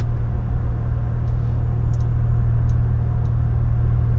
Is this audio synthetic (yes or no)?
no